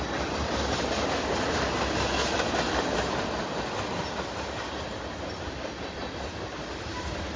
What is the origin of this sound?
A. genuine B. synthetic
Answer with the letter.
A